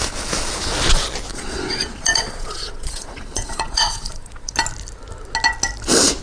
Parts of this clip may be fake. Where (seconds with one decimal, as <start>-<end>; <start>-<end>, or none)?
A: 1.3-4.5